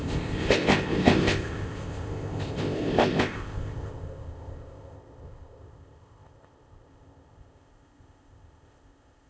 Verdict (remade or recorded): remade